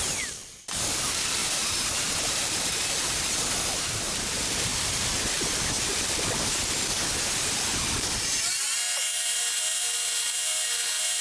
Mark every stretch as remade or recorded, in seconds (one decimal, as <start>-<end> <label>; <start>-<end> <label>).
0.0-1.4 recorded; 1.4-2.7 remade; 2.7-11.2 recorded

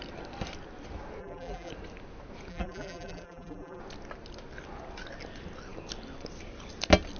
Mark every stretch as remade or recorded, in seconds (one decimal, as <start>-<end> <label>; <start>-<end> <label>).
0.0-1.2 recorded; 1.2-1.7 remade; 1.7-2.5 recorded; 2.5-3.8 remade; 3.8-7.2 recorded

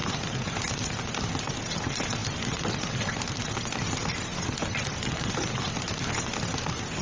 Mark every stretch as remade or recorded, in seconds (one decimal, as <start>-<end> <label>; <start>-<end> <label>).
0.0-1.5 remade; 1.5-4.3 recorded; 4.3-6.1 remade; 6.1-7.0 recorded

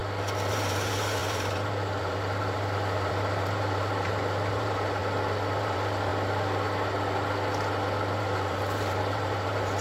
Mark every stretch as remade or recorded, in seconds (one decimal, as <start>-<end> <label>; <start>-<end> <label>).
0.0-0.5 recorded; 0.5-5.0 remade; 5.0-5.6 recorded; 5.6-6.1 remade; 6.1-8.2 recorded; 8.2-9.8 remade